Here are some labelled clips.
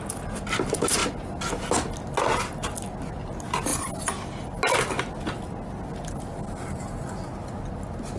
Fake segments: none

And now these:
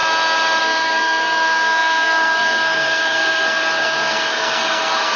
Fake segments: 0.6-5.2 (codec, SNAC)

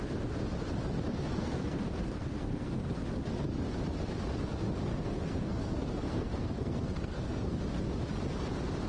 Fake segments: 1.1-3.0 (codec, SNAC); 4.9-7.6

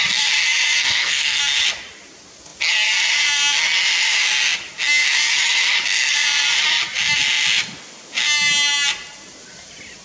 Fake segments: 0.8-1.4 (codec, SNAC)

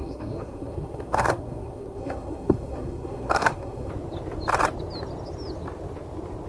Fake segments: 0.0-3.9 (codec, SNAC)

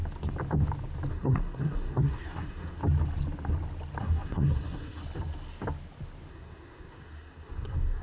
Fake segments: 1.1-2.8 (codec, SNAC); 4.0-5.0; 6.3-8.0

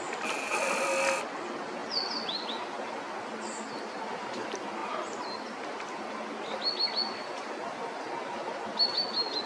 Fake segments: none